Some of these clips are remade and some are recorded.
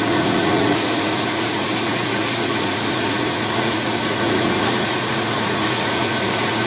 remade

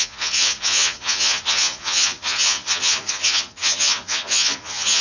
remade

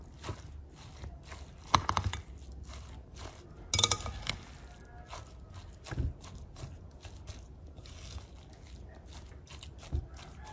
recorded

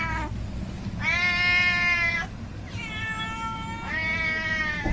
recorded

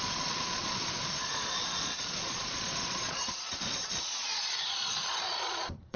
remade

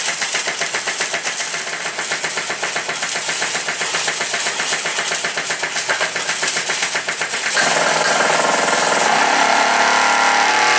recorded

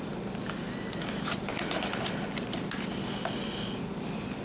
recorded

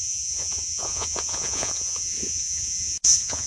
remade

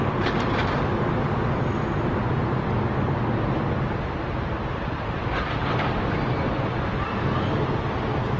recorded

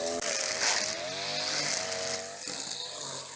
recorded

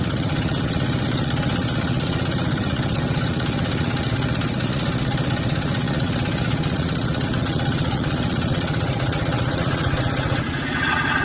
remade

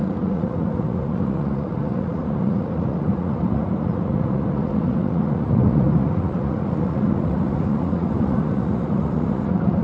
remade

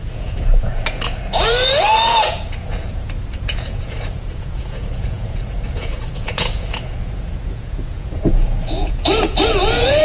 remade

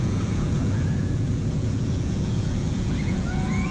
remade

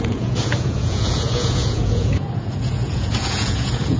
remade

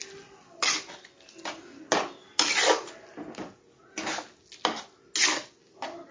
recorded